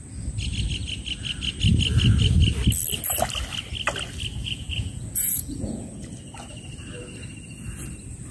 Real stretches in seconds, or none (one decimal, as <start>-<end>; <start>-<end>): 0.0-4.4; 5.9-8.3